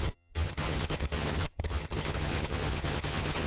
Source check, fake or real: fake